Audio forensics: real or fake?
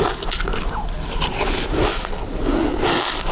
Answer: real